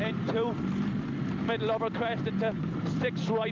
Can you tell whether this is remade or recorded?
recorded